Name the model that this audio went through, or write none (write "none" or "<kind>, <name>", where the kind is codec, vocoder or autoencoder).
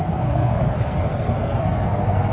codec, SNAC